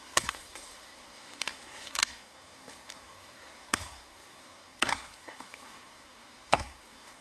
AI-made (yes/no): yes